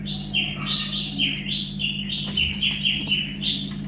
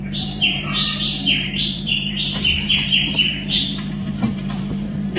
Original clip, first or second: first